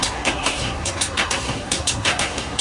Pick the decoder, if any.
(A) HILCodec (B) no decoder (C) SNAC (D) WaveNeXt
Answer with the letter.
C